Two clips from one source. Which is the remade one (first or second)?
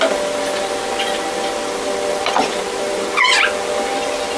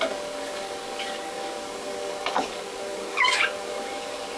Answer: second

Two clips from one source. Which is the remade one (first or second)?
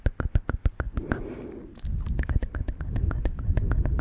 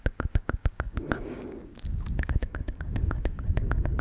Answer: second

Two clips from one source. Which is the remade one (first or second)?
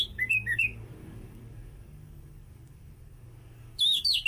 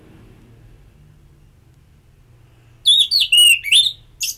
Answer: first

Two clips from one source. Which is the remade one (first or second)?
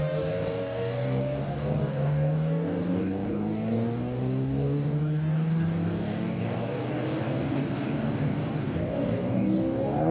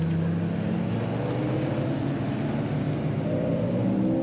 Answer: first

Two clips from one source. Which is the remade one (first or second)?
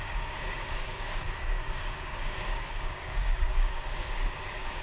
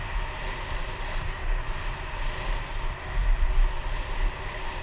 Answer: first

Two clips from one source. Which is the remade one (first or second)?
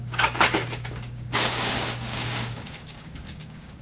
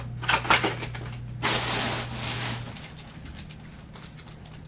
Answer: first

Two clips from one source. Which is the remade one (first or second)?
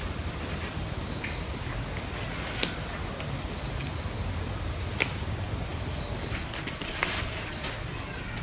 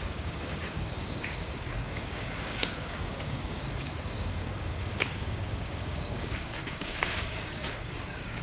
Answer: second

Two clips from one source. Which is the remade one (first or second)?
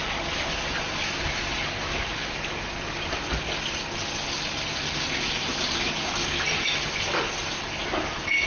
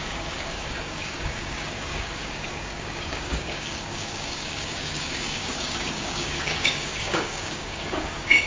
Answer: second